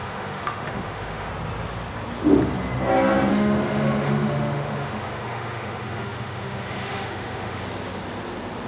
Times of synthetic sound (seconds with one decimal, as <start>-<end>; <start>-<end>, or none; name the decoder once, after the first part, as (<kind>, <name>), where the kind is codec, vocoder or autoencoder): 0.0-1.3 (autoencoder, DAC-VAE); 3.3-7.6